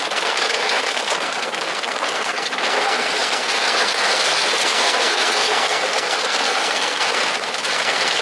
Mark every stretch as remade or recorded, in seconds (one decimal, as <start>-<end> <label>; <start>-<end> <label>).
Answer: 0.0-8.2 remade